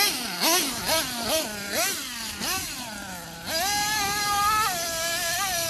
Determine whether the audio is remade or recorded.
recorded